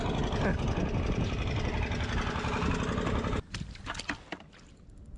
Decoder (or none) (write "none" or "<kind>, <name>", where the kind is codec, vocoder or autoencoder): none